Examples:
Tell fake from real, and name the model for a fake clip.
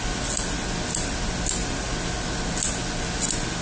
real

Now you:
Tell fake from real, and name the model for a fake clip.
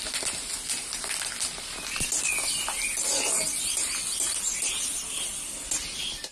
real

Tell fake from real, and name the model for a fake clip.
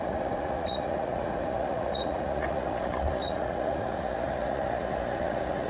fake, vocoder, Vocos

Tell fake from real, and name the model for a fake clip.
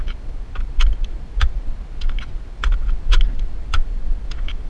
real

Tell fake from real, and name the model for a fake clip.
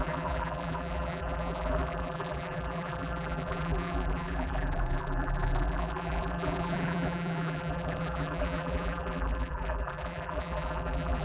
fake, vocoder, BigVGAN v2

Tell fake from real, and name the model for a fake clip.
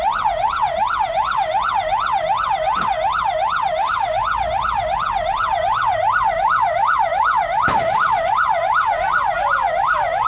real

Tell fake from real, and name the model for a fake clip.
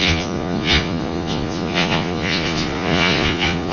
fake, vocoder, Vocos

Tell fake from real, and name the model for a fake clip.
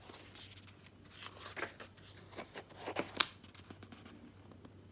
real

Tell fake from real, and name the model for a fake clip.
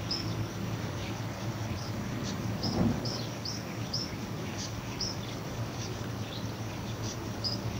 fake, codec, DAC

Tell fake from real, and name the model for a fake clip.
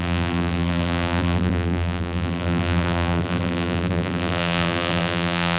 fake, vocoder, BigVGAN v2